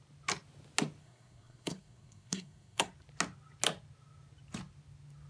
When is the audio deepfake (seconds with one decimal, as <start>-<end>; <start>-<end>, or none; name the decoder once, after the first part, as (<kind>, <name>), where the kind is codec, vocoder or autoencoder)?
1.0-2.9 (codec, SNAC)